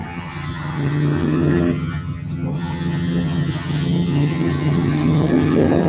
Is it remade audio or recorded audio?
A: remade